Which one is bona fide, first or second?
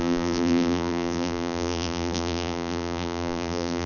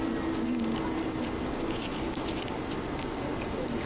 second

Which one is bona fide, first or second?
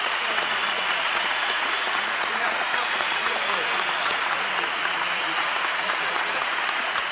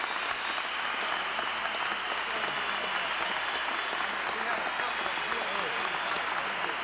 second